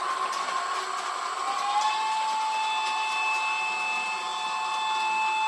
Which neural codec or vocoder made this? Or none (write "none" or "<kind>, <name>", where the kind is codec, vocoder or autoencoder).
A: none